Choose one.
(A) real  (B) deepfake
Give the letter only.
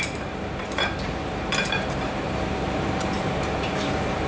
B